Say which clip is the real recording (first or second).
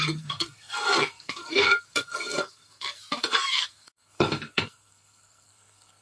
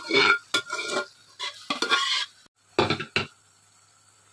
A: second